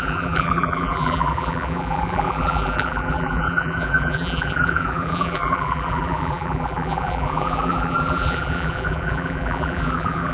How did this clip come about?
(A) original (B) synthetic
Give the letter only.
B